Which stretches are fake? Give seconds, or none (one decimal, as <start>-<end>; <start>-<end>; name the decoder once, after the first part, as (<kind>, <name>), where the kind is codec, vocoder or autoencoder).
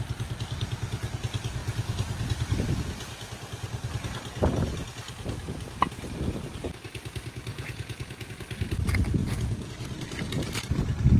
7.5-8.3 (vocoder, Vocos); 9.2-9.7